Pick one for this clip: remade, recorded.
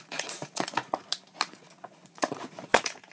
remade